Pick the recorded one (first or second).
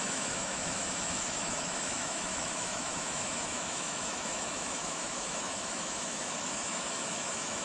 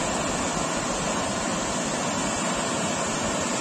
second